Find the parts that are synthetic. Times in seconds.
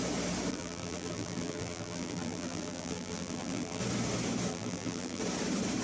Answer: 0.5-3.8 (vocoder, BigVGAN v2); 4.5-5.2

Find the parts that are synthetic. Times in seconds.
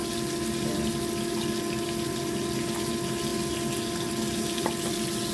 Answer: none